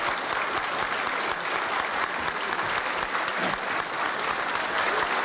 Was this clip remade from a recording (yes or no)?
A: no